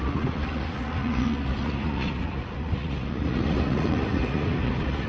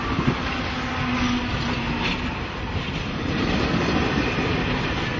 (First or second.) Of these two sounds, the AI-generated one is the first